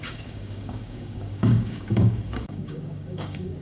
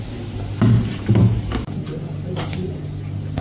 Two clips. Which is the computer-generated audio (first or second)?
first